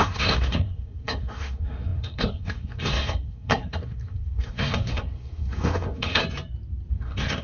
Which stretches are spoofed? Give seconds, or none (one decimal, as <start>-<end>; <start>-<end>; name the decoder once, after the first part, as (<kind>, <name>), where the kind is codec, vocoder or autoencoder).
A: 0.0-6.2 (codec, SNAC); 6.9-7.4